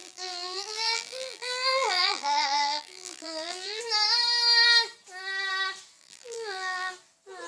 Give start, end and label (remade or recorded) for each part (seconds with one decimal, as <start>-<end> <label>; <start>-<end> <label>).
0.0-3.8 remade; 3.8-6.0 recorded; 6.0-6.9 remade; 6.9-7.5 recorded